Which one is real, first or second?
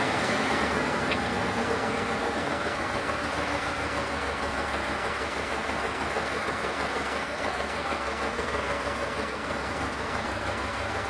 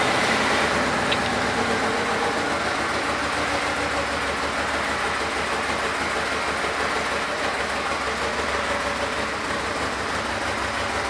second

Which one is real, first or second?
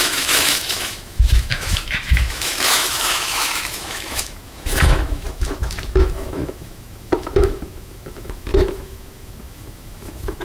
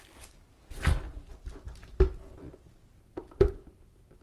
second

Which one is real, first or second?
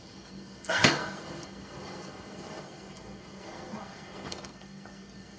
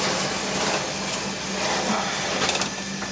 second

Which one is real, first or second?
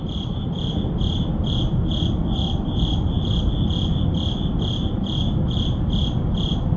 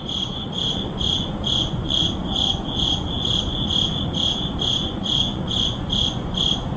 first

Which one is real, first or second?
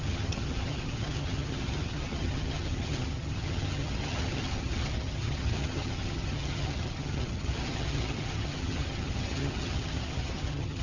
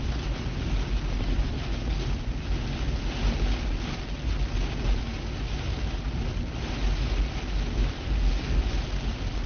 second